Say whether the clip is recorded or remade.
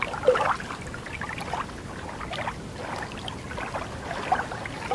recorded